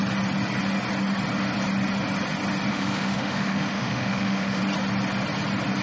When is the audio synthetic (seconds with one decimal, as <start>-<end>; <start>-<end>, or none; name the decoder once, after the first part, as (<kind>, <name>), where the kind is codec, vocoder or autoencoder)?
2.7-4.6 (autoencoder, DAC-VAE)